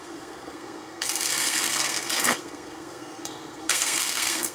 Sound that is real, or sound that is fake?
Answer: fake